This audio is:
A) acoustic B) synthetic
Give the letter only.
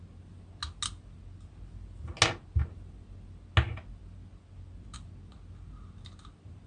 A